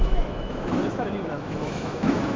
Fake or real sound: fake